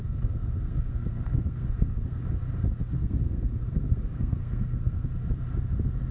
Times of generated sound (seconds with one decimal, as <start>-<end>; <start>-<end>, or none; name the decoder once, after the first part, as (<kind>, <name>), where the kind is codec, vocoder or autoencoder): 0.0-2.2 (codec, SNAC); 2.9-5.1